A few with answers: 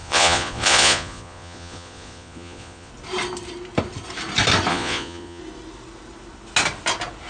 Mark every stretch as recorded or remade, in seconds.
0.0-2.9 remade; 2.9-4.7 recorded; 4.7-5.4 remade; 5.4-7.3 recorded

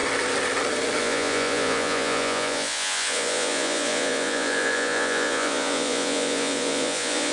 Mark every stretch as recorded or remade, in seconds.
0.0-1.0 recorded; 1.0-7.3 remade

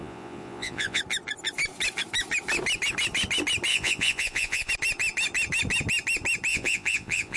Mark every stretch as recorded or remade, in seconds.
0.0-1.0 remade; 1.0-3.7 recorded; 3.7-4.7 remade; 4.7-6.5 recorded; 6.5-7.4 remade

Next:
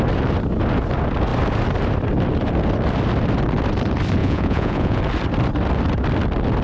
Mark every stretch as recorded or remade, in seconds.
0.0-4.2 recorded; 4.2-5.0 remade; 5.0-6.6 recorded

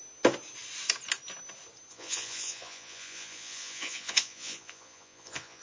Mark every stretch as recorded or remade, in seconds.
0.0-1.9 recorded; 1.9-5.6 remade

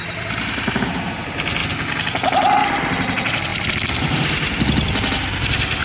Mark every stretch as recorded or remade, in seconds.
0.0-5.8 recorded

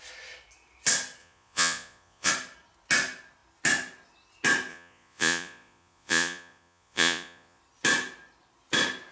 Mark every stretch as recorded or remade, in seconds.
0.0-1.2 recorded; 1.2-2.3 remade; 2.3-4.7 recorded; 4.7-7.6 remade; 7.6-9.1 recorded

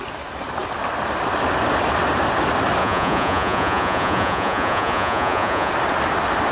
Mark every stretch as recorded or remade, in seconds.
0.0-2.8 recorded; 2.8-5.7 remade; 5.7-6.5 recorded